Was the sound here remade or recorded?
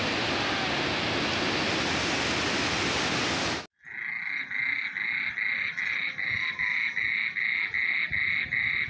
recorded